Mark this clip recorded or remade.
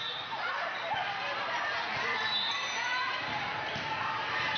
remade